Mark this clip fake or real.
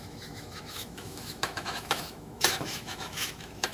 fake